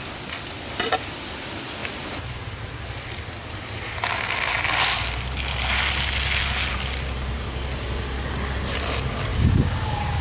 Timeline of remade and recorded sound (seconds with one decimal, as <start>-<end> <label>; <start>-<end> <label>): 0.0-9.3 recorded; 9.3-10.2 remade